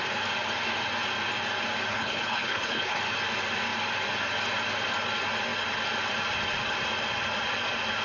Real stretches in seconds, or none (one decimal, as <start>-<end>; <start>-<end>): 0.0-1.9; 3.0-8.0